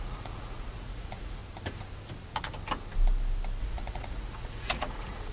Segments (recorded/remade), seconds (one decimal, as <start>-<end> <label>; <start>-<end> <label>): 0.0-1.4 remade; 1.4-3.6 recorded; 3.6-5.3 remade